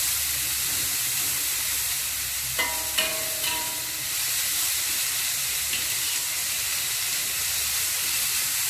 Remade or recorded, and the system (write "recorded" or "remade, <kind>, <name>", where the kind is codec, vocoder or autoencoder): remade, vocoder, BigVGAN v2